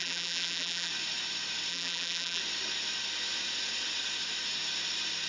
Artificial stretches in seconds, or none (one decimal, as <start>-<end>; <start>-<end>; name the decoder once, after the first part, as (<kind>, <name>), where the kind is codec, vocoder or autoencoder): 0.0-0.9 (vocoder, BigVGAN v2); 1.7-2.4